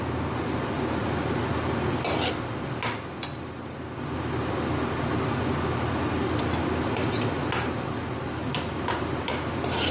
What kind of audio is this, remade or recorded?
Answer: recorded